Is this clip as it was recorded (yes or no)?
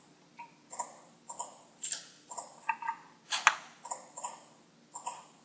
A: yes